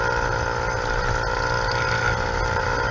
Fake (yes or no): no